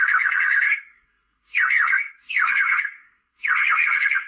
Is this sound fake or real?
fake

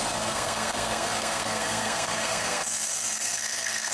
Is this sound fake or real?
fake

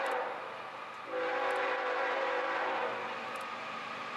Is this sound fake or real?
real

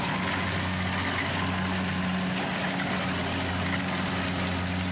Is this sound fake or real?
real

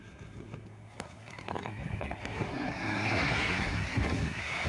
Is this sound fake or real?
fake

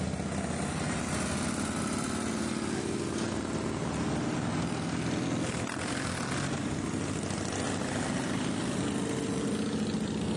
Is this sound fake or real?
real